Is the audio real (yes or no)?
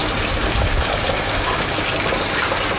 yes